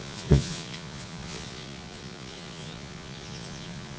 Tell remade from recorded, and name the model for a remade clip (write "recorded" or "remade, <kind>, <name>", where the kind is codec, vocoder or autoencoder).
remade, vocoder, Vocos